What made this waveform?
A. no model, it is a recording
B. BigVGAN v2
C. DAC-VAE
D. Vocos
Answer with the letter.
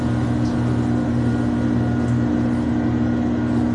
A